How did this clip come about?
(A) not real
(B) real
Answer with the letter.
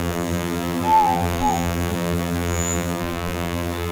A